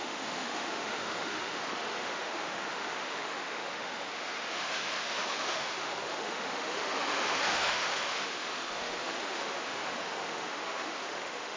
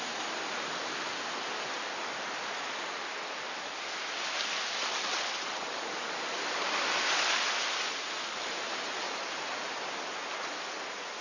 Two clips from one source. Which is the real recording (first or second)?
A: second